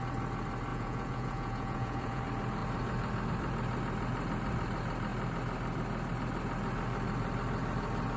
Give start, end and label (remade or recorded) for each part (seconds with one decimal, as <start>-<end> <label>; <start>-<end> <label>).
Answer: 0.0-0.7 recorded; 0.7-2.2 remade; 2.2-8.2 recorded